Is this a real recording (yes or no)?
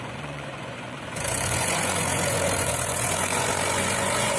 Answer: no